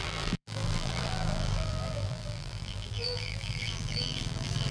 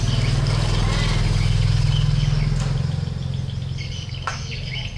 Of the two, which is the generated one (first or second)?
first